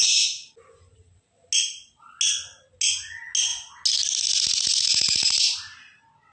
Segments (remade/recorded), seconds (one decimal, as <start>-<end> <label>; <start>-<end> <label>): 0.0-6.3 recorded